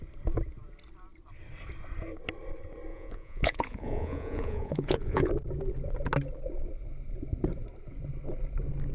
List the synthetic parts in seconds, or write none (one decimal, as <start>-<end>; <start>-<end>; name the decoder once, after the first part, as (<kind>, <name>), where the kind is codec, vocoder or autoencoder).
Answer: 2.9-5.3 (vocoder, Vocos)